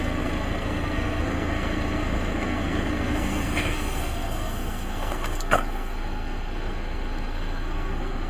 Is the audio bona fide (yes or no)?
no